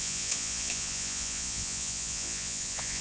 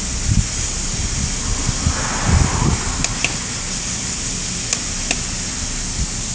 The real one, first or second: second